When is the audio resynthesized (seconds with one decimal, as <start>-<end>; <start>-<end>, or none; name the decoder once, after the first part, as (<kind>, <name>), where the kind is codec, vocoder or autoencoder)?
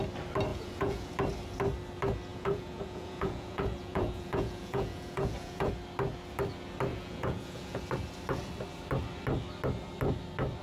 0.5-1.1 (vocoder, Vocos); 2.3-5.7; 6.9-7.8